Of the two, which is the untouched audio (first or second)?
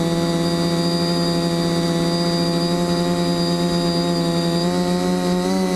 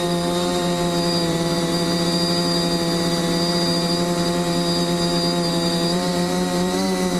first